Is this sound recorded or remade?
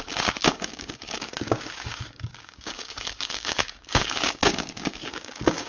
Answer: remade